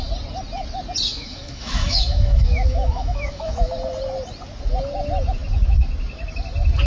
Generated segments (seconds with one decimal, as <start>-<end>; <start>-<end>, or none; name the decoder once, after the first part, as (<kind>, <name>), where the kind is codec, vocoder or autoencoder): 1.1-3.7 (autoencoder, DAC-VAE)